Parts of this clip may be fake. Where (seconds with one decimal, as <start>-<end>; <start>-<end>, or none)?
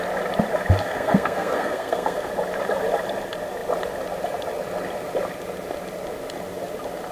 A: 0.8-2.3